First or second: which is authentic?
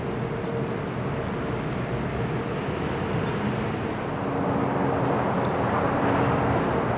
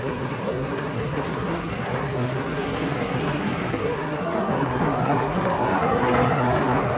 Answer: first